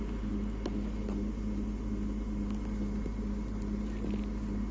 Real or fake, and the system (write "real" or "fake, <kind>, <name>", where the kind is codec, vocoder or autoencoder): real